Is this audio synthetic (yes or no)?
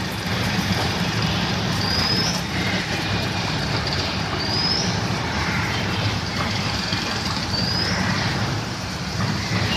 yes